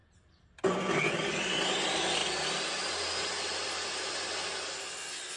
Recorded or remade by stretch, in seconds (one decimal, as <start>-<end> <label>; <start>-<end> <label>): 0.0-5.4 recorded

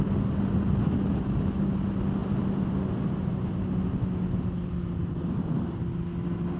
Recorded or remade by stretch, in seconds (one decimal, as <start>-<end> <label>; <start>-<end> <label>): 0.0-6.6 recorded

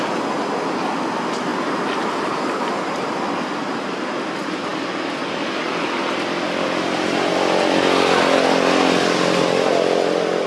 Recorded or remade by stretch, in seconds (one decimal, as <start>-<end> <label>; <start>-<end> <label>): 0.0-10.5 recorded

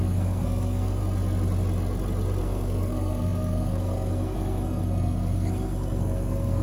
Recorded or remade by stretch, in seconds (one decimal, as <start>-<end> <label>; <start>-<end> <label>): 0.0-1.0 remade; 1.0-2.4 recorded; 2.4-6.6 remade

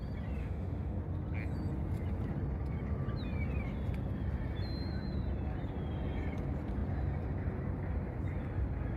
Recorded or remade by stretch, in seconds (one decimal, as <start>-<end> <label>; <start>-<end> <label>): 0.0-0.4 recorded; 0.4-1.0 remade; 1.0-9.0 recorded

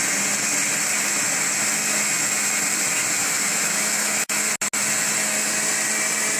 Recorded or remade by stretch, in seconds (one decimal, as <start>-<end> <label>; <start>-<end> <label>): 0.0-3.2 recorded; 3.2-4.5 remade; 4.5-6.4 recorded

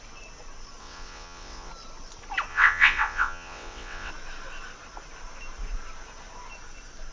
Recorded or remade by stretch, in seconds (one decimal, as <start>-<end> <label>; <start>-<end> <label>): 0.0-0.8 recorded; 0.8-1.7 remade; 1.7-2.5 recorded; 2.5-4.1 remade; 4.1-7.1 recorded